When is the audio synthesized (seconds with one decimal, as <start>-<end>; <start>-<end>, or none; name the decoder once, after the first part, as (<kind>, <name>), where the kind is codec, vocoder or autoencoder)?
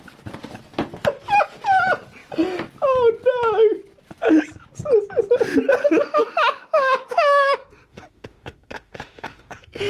5.8-9.9 (autoencoder, DAC-VAE)